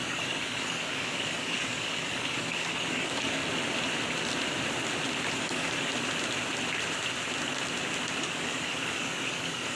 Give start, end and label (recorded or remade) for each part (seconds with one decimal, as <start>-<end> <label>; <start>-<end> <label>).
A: 0.0-3.4 remade; 3.4-5.4 recorded; 5.4-5.9 remade; 5.9-8.2 recorded; 8.2-9.8 remade